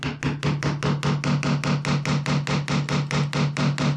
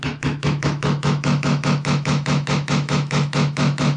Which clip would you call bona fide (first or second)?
first